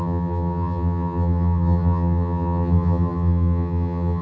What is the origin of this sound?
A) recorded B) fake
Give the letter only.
B